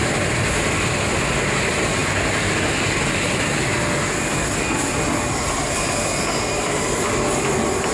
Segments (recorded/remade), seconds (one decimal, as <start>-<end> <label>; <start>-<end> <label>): 0.0-7.9 recorded